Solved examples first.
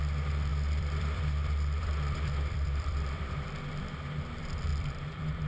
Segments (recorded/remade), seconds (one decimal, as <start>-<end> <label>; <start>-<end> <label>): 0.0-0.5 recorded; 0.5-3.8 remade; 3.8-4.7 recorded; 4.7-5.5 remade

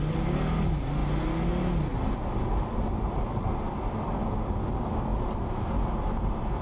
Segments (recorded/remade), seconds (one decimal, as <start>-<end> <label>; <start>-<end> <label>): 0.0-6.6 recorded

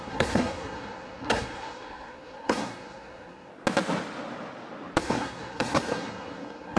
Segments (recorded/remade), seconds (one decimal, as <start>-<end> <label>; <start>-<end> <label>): 0.0-3.5 remade; 3.5-5.0 recorded; 5.0-6.8 remade

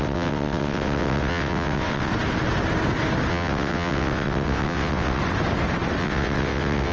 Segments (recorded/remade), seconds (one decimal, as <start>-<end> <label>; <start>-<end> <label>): 0.0-2.1 remade; 2.1-3.3 recorded; 3.3-5.2 remade; 5.2-6.0 recorded; 6.0-6.9 remade

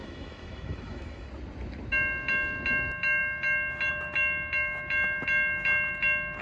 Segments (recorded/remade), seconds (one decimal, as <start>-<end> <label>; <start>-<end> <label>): 0.0-1.3 remade; 1.3-6.4 recorded